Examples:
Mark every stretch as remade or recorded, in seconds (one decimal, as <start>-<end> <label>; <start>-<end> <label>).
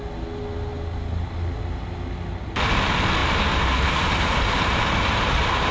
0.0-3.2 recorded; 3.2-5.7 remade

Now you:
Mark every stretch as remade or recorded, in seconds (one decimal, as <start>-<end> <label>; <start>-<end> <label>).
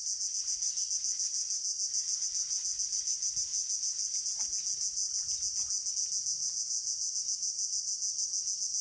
0.0-6.4 recorded; 6.4-7.1 remade; 7.1-8.8 recorded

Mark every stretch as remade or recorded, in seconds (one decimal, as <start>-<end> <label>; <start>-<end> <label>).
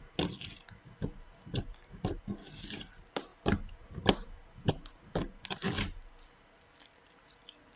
0.0-7.8 recorded